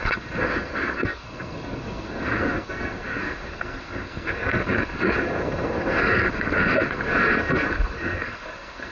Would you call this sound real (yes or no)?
no